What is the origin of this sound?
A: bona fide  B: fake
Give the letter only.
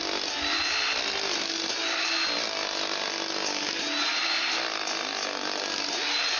A